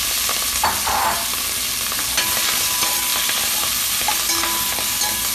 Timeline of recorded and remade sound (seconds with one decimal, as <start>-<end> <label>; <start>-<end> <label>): 0.0-5.3 recorded